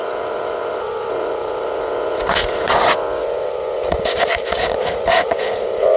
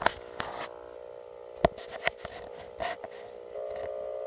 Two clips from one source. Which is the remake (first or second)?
first